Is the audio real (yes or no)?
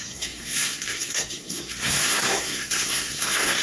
no